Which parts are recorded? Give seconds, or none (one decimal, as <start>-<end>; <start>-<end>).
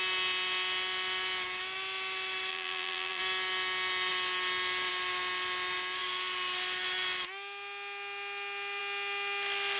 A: 0.0-2.5; 3.2-9.8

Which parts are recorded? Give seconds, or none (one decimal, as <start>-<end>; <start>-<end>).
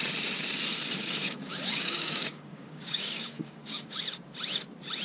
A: 0.0-1.0; 4.0-5.0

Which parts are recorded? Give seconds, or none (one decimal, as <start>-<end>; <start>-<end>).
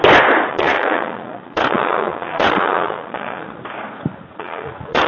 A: 0.0-0.5; 3.6-4.1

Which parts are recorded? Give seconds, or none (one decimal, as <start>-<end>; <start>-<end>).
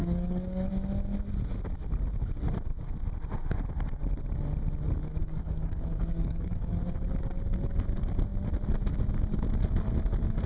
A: 0.7-5.2; 6.8-10.5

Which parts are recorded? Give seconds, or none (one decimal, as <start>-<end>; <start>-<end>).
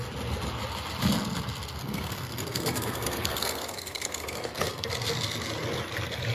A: 0.0-1.8; 4.9-6.3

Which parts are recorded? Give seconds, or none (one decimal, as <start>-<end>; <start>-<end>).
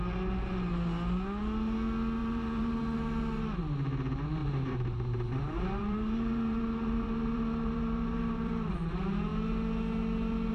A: 0.0-2.2; 2.8-4.4; 8.9-10.5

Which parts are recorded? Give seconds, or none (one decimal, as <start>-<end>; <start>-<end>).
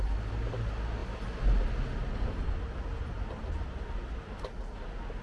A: 0.0-5.2